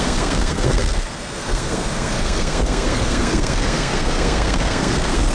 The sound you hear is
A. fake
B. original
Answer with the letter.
A